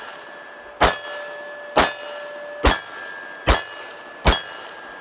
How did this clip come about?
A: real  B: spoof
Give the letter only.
A